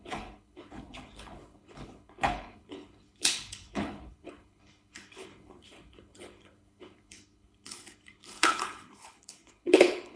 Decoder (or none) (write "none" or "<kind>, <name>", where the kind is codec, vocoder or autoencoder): codec, HILCodec